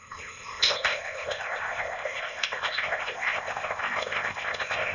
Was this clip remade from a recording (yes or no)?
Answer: yes